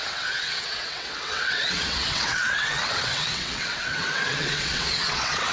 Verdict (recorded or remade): remade